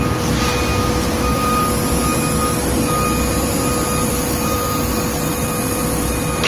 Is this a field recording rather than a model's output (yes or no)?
yes